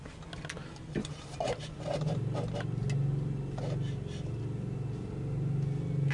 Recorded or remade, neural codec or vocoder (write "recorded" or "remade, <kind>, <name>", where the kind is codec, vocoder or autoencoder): recorded